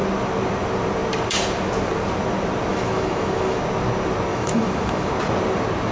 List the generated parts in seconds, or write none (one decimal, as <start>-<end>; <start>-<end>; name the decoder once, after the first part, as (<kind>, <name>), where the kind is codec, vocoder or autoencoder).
2.7-3.6 (autoencoder, DAC-VAE); 4.3-5.1